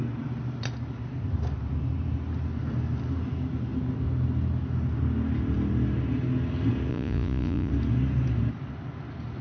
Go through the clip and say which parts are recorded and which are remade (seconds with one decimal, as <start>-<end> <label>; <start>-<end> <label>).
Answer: 0.0-6.9 recorded; 6.9-7.7 remade; 7.7-9.4 recorded